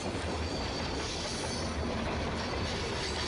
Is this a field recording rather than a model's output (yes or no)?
no